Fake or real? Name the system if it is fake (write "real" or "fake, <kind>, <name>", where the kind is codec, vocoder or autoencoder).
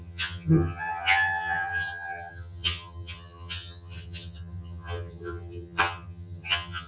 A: fake, vocoder, HiFi-GAN